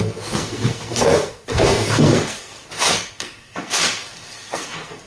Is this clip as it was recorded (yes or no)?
no